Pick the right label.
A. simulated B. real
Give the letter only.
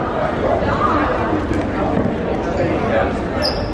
B